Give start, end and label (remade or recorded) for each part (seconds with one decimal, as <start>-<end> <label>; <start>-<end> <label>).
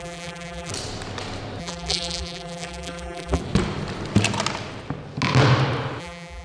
0.0-0.7 remade; 0.7-1.6 recorded; 1.6-3.4 remade; 3.4-6.0 recorded; 6.0-6.4 remade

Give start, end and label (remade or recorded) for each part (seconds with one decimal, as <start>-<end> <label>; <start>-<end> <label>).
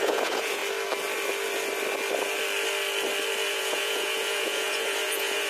0.0-0.6 remade; 0.6-3.5 recorded; 3.5-5.5 remade